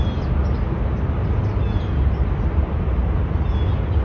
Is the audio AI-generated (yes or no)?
no